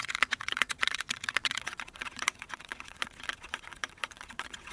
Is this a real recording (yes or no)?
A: no